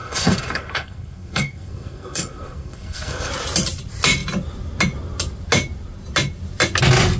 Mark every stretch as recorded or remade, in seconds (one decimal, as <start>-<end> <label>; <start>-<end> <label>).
0.0-3.3 remade; 3.3-7.2 recorded